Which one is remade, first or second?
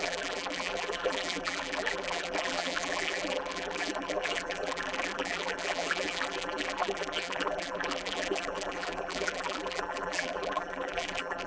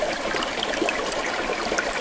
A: first